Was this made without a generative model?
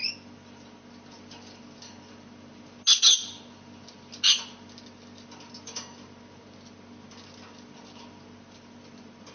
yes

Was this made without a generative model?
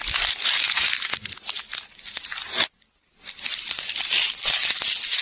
yes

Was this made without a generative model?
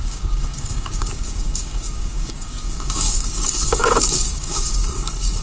no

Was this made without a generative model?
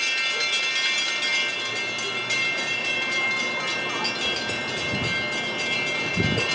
yes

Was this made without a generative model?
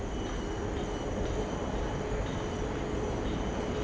yes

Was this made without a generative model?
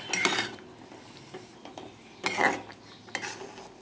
yes